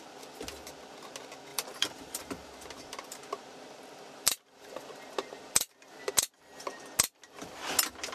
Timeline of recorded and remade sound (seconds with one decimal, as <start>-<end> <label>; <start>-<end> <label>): 0.0-1.5 recorded; 1.5-6.1 remade; 6.1-8.1 recorded